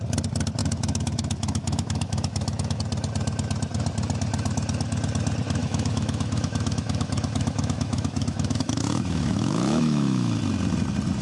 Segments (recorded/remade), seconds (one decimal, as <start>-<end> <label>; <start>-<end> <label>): 0.0-0.6 recorded; 0.6-2.8 remade; 2.8-5.6 recorded; 5.6-10.4 remade; 10.4-11.2 recorded